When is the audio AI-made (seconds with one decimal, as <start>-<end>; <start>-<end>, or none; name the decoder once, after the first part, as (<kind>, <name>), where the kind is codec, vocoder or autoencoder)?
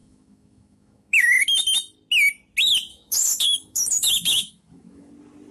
0.0-1.4 (autoencoder, DAC-VAE); 2.9-5.1